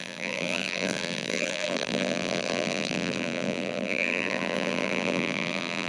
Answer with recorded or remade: remade